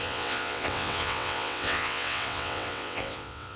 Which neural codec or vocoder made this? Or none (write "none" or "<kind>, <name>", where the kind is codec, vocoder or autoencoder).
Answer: vocoder, WaveNeXt